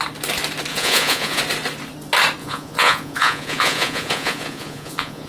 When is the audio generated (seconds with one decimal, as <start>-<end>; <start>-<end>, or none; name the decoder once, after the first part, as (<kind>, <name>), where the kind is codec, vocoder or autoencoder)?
0.7-1.4 (vocoder, Vocos); 2.4-5.3